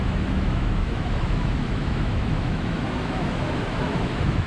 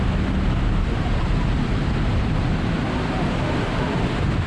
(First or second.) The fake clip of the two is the first